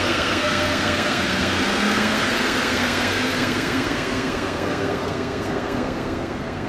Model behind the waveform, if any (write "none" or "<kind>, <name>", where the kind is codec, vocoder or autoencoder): codec, SNAC